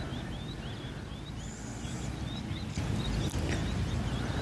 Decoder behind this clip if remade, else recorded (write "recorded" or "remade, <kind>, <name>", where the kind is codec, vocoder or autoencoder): recorded